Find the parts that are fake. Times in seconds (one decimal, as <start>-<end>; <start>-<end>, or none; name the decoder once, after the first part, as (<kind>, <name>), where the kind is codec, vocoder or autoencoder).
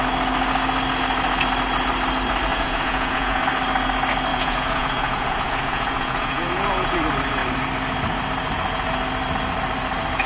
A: 2.5-3.4 (vocoder, Vocos); 4.3-7.0